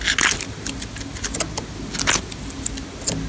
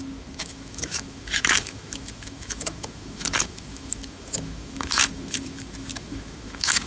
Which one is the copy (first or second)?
second